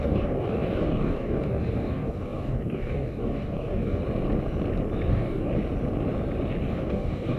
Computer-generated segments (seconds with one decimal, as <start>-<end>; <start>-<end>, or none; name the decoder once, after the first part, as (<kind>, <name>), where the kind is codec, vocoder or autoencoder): 0.0-4.0 (codec, DAC); 5.1-5.6; 6.6-7.4